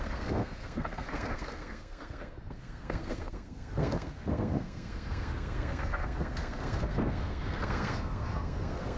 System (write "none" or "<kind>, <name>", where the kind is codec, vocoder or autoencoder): codec, SNAC